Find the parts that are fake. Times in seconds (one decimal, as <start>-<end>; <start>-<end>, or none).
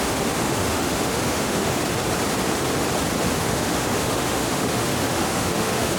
0.0-1.8; 3.4-6.0